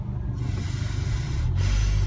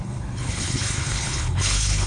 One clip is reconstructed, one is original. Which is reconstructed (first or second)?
second